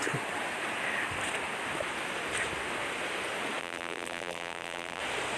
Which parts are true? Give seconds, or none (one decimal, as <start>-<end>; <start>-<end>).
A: 0.0-3.6; 5.0-5.4